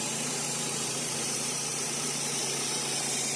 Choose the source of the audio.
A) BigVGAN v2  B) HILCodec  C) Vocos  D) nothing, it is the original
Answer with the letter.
A